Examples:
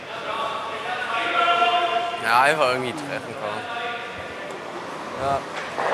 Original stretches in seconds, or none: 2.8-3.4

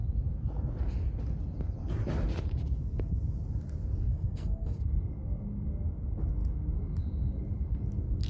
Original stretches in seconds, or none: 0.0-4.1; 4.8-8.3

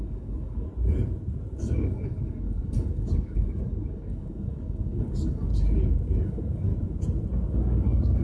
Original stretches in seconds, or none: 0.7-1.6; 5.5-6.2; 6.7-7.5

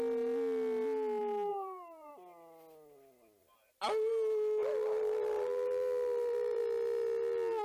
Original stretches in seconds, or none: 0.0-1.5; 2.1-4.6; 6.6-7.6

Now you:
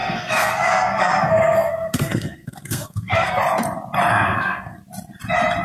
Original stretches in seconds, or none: 3.4-4.1; 4.8-5.6

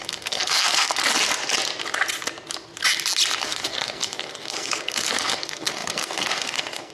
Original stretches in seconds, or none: 1.0-3.4